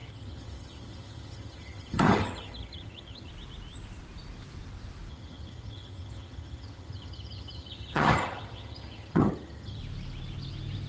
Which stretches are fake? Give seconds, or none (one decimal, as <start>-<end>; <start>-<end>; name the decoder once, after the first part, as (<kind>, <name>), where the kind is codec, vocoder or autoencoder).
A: 0.0-3.3 (vocoder, HiFi-GAN); 5.1-9.8